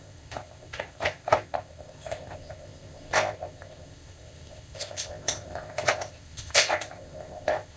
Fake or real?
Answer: fake